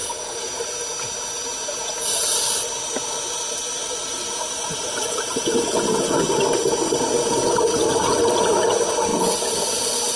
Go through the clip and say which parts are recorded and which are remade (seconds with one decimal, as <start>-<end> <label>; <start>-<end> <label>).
0.0-0.7 remade; 0.7-3.8 recorded; 3.8-6.1 remade; 6.1-9.1 recorded; 9.1-9.7 remade; 9.7-10.2 recorded